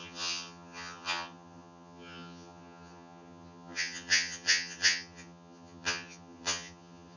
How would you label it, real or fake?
fake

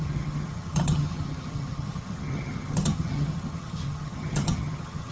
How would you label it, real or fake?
fake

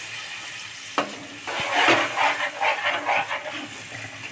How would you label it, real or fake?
real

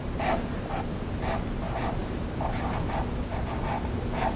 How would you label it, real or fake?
real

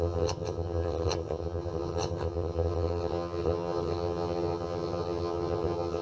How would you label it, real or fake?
fake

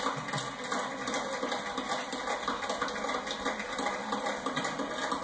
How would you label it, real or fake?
real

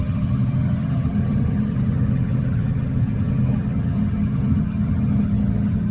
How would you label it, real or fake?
fake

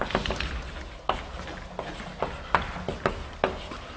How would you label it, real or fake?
real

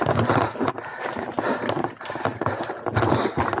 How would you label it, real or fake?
real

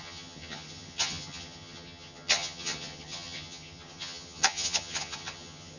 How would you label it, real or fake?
fake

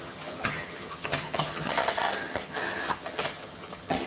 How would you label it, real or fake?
fake